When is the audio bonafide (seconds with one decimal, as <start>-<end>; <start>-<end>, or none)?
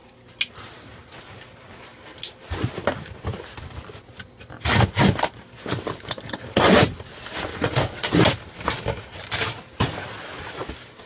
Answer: 0.0-7.5; 8.1-11.1